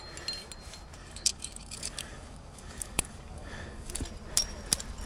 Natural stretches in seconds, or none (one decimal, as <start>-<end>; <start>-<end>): 0.0-0.9; 4.0-5.1